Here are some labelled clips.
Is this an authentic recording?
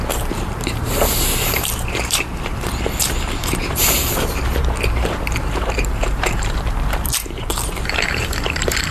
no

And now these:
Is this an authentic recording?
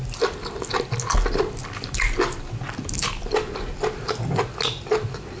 yes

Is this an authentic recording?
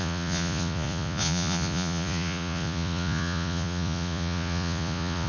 no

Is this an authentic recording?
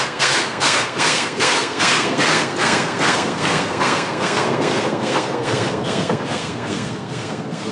no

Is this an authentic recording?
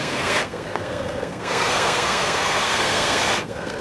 no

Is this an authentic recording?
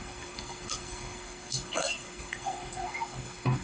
no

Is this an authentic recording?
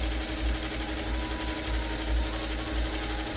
yes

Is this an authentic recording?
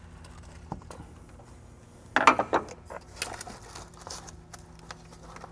yes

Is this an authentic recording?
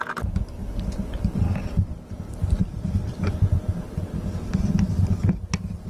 yes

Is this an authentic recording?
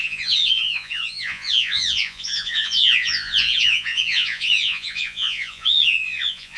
no